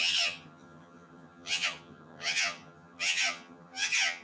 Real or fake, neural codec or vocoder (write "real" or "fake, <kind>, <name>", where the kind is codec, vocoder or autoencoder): fake, vocoder, HiFi-GAN